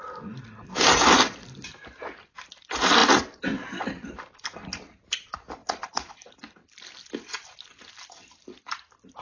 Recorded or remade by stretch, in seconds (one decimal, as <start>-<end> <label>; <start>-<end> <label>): 0.0-5.6 recorded; 5.6-6.1 remade; 6.1-9.2 recorded